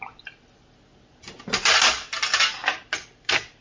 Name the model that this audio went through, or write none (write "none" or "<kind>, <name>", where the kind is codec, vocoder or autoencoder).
none